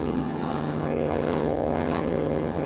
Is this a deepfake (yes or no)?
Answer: yes